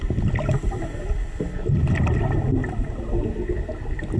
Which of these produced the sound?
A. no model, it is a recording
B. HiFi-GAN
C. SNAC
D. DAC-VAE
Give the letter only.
A